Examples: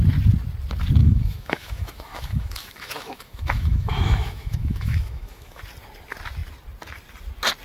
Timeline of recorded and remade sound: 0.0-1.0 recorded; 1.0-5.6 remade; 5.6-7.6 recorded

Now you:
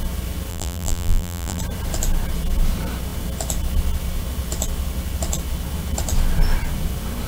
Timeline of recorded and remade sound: 0.0-0.5 recorded; 0.5-1.6 remade; 1.6-7.3 recorded

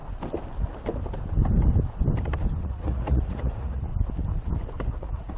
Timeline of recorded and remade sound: 0.0-2.6 recorded; 2.6-3.9 remade; 3.9-4.9 recorded; 4.9-5.4 remade